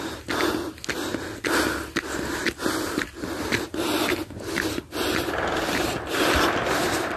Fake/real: real